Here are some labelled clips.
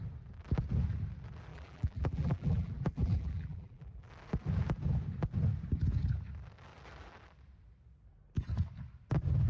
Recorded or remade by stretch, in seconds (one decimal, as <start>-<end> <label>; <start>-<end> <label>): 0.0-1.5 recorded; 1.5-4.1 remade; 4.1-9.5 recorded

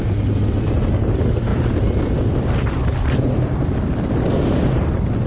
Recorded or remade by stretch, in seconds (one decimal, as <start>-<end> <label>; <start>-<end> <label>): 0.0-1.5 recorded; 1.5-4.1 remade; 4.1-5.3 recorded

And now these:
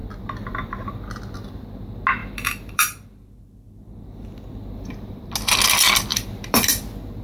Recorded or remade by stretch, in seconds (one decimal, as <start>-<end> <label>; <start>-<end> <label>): 0.0-2.2 recorded; 2.2-5.3 remade; 5.3-6.1 recorded; 6.1-6.7 remade; 6.7-7.2 recorded

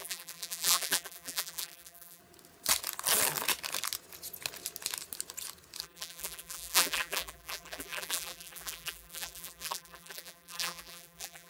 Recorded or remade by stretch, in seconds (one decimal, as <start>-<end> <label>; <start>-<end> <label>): 0.0-2.2 remade; 2.2-5.8 recorded; 5.8-11.5 remade